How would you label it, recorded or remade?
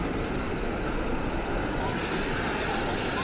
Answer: recorded